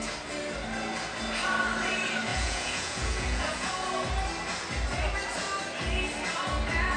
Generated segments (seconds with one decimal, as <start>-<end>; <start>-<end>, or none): 2.3-3.7